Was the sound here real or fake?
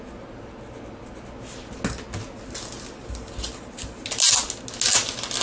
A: real